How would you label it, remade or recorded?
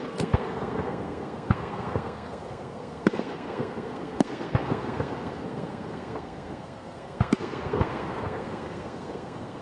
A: remade